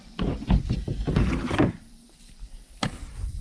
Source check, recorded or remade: remade